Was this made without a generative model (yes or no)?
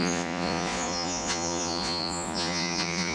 no